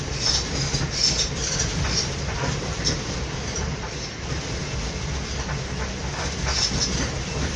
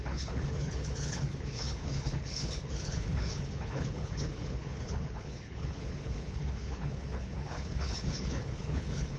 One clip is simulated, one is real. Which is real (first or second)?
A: first